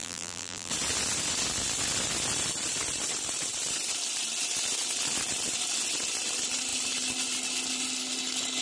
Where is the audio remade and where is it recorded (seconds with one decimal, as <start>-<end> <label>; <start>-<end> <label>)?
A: 0.0-0.7 remade; 0.7-8.6 recorded